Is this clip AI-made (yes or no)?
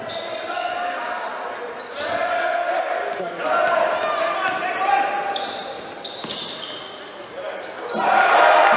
no